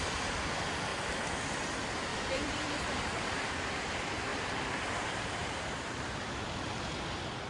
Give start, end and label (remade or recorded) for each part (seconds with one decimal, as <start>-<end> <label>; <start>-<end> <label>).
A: 0.0-2.1 recorded; 2.1-3.7 remade; 3.7-4.3 recorded; 4.3-5.9 remade; 5.9-7.5 recorded